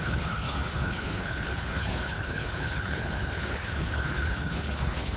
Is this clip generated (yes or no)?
yes